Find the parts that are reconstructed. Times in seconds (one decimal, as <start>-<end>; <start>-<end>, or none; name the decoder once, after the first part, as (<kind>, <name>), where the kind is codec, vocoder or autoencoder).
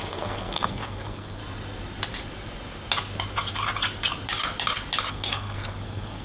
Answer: 0.0-1.4 (codec, SNAC); 5.1-6.2